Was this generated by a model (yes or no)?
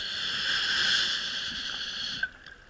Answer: no